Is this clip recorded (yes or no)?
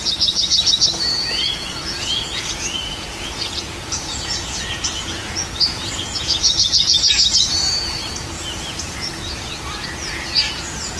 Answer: no